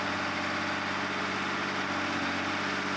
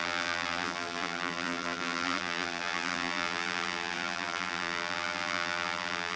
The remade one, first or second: second